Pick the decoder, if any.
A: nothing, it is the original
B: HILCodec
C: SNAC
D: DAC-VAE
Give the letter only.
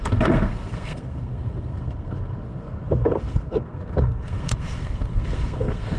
C